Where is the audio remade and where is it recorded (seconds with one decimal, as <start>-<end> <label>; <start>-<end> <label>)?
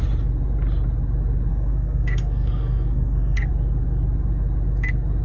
0.0-1.5 recorded; 1.5-3.5 remade; 3.5-5.2 recorded